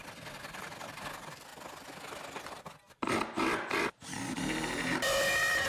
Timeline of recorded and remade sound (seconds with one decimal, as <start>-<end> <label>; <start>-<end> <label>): 0.0-5.7 recorded